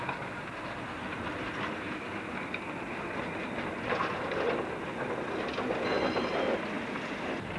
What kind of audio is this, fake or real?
real